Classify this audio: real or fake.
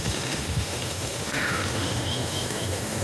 fake